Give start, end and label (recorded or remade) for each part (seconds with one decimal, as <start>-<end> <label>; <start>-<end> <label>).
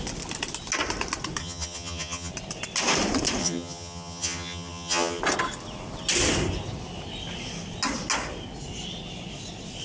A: 0.0-1.4 recorded; 1.4-2.3 remade; 2.3-3.4 recorded; 3.4-5.2 remade; 5.2-9.8 recorded